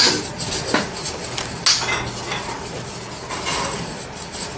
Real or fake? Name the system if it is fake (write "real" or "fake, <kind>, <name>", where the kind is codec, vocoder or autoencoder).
real